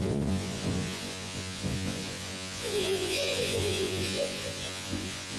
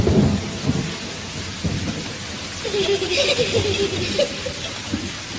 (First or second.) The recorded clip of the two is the second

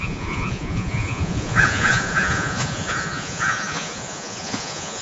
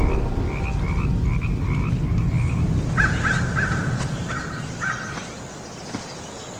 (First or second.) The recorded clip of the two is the second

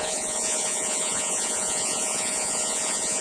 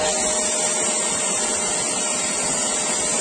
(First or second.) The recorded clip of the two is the second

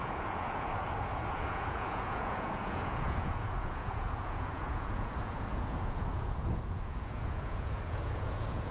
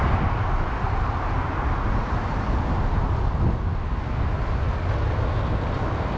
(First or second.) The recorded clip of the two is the second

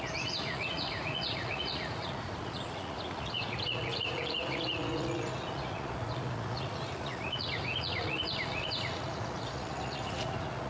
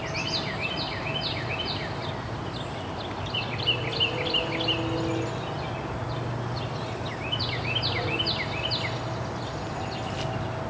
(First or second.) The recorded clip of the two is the second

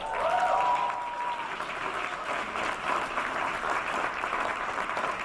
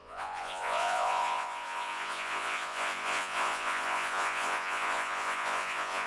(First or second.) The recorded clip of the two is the first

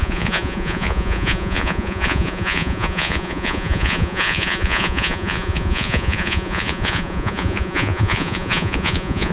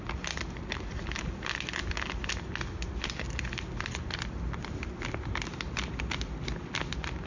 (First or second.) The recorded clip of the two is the second